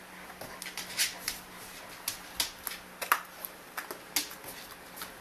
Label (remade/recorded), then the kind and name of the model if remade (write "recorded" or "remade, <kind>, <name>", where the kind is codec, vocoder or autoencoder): recorded